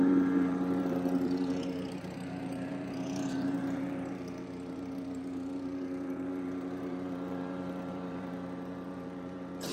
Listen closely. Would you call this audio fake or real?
fake